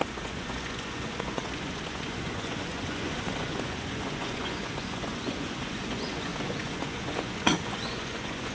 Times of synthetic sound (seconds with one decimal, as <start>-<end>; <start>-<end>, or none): 0.0-8.5